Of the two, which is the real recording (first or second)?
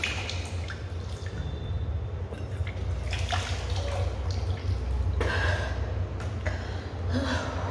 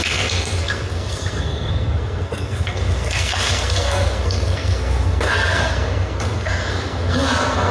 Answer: first